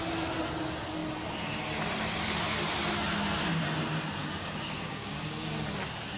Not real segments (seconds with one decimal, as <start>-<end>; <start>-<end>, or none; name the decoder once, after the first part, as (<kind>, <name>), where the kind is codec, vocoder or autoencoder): 4.2-5.3 (codec, DAC)